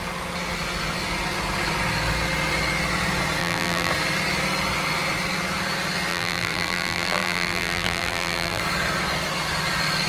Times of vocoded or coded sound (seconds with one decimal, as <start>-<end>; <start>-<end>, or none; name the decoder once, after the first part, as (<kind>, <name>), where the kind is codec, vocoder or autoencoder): 3.4-3.9 (vocoder, BigVGAN v2); 6.1-8.6